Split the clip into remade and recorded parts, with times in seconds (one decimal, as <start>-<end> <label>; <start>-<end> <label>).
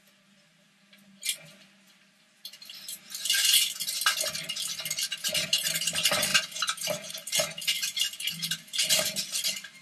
0.0-9.8 recorded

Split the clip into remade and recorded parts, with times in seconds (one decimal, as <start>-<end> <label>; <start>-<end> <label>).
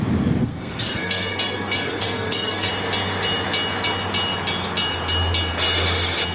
0.0-0.4 recorded; 0.4-2.7 remade; 2.7-6.3 recorded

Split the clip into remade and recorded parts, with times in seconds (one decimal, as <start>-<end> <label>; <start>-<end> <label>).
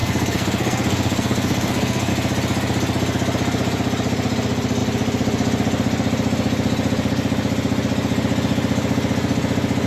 0.0-2.1 remade; 2.1-9.9 recorded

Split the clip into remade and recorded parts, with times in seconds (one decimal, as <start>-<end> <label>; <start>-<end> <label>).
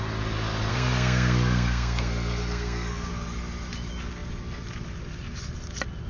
0.0-0.7 recorded; 0.7-3.1 remade; 3.1-6.1 recorded